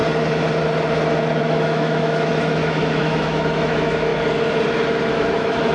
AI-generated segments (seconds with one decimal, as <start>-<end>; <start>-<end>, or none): 1.4-4.1; 5.1-5.7